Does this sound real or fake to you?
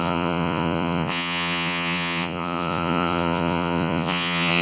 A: fake